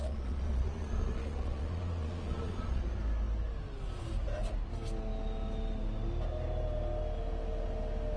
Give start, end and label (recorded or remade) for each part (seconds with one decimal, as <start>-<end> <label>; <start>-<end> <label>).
0.0-2.8 remade; 2.8-8.2 recorded